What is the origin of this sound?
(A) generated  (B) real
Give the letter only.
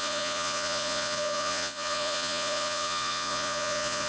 A